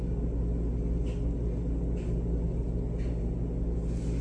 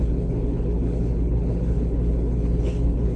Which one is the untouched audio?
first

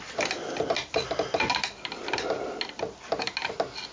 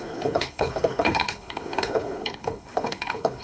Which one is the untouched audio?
first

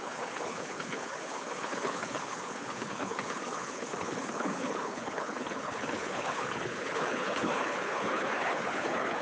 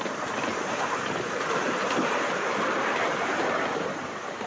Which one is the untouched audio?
second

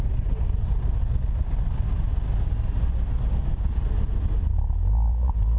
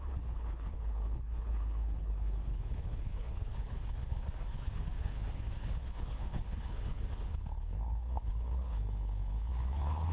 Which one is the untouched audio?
first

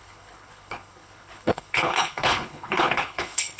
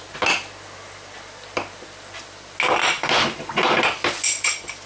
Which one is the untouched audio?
second